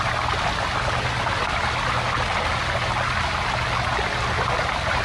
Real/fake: real